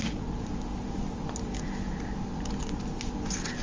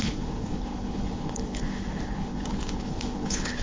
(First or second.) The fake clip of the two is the second